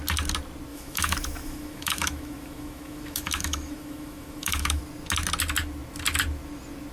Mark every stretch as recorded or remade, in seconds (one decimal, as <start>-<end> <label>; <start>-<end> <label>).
0.0-0.7 recorded; 0.7-4.8 remade; 4.8-6.9 recorded